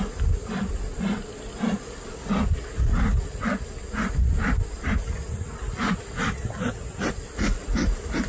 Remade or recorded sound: recorded